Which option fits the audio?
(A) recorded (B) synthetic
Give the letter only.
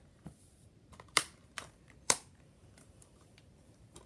B